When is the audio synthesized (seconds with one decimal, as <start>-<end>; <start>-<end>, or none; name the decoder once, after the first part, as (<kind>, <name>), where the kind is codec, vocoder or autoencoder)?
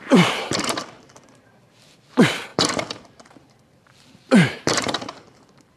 0.0-5.8 (vocoder, BigVGAN v2)